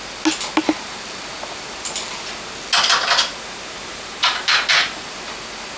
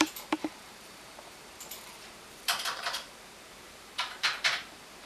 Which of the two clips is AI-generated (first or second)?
second